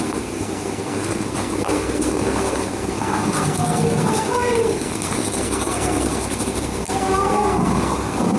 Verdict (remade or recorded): remade